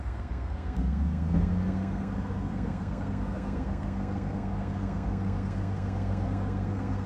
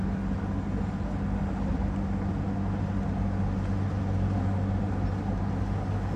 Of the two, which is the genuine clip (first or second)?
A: second